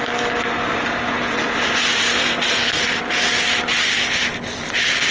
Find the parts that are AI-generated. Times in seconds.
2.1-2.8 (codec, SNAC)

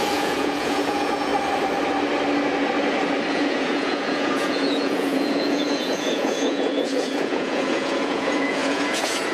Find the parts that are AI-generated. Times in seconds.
0.0-1.3 (vocoder, Vocos); 3.3-9.3